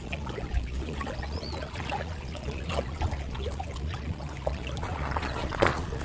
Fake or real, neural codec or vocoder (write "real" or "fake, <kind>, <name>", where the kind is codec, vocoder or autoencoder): fake, vocoder, Vocos